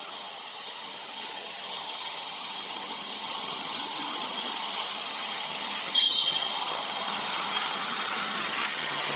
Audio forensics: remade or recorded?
remade